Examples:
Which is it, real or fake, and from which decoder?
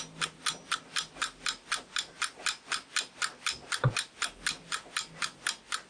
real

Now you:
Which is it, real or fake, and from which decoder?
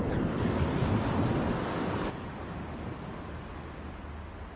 real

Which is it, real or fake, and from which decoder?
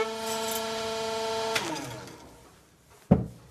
real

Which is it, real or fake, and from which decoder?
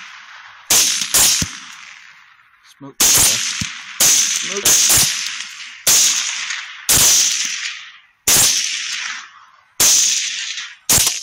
real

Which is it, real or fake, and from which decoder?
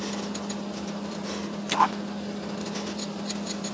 real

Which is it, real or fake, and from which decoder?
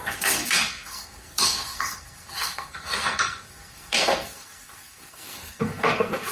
fake, codec, SNAC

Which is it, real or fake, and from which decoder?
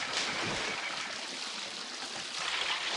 real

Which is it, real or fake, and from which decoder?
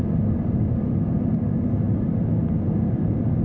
real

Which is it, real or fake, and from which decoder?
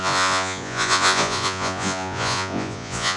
fake, vocoder, Vocos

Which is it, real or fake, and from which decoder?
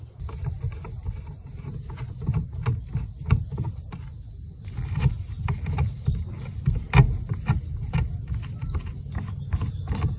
real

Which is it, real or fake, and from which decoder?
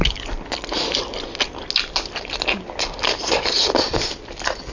real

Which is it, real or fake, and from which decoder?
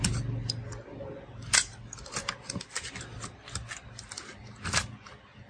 real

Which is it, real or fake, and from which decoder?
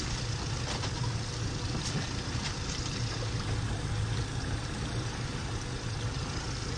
real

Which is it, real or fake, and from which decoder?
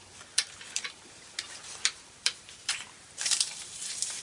fake, vocoder, BigVGAN v2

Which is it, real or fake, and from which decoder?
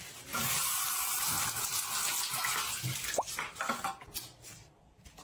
real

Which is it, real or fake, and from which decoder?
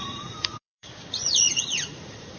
fake, vocoder, Vocos